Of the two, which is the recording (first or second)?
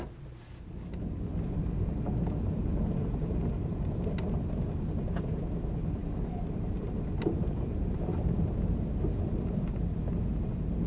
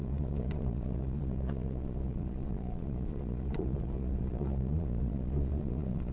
first